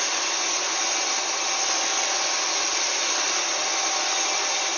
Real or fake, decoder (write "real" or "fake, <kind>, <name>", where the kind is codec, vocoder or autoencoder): real